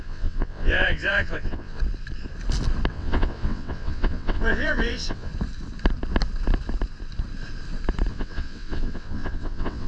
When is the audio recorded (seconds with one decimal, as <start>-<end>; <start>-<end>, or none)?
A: 1.8-2.9; 5.3-8.1